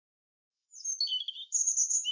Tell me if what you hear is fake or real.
fake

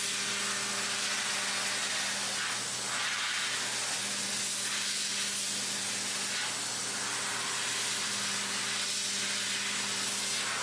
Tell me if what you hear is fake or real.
real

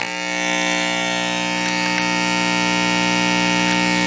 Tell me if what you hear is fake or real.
real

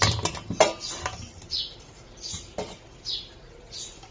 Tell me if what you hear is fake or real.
real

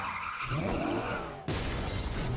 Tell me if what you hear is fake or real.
fake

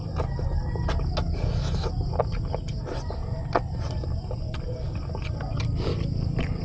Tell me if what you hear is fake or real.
real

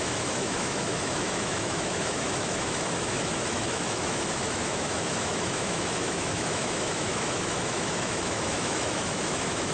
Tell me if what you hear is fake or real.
fake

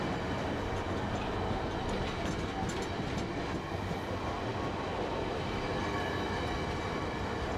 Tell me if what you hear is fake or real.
real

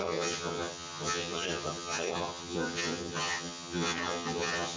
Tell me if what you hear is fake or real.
fake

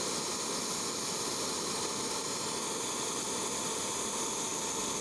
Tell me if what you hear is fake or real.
real